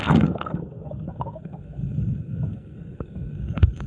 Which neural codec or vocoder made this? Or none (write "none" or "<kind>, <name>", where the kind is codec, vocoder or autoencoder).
codec, SNAC